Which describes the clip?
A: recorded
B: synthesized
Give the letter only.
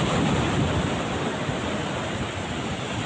A